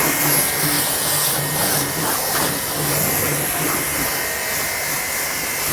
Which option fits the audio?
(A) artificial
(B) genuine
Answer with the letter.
B